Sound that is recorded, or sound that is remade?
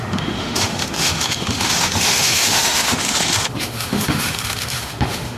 remade